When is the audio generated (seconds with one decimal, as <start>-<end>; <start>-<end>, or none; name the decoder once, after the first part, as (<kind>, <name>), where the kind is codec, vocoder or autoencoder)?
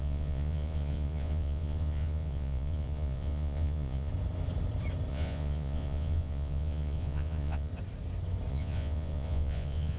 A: 0.0-4.1 (vocoder, Vocos); 5.1-7.7; 8.5-10.0